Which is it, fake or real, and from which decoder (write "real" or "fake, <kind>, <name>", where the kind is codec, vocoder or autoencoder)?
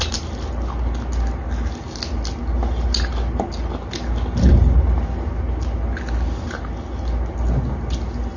real